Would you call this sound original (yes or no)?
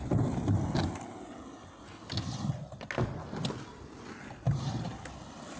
yes